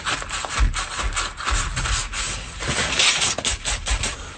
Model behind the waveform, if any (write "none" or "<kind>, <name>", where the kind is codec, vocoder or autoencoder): none